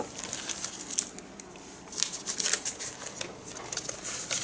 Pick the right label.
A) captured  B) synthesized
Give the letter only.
A